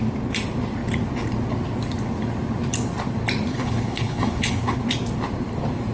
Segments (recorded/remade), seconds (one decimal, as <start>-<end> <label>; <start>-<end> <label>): 0.0-3.5 recorded; 3.5-4.8 remade; 4.8-5.9 recorded